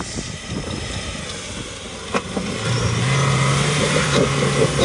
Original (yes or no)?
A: yes